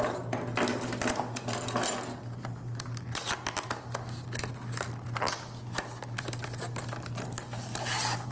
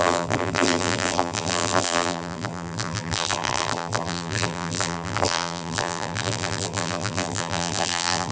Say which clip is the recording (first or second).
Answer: first